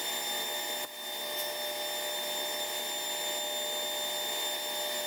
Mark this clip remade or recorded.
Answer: recorded